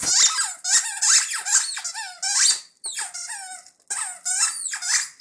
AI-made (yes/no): no